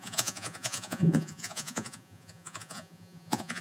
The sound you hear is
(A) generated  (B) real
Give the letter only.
A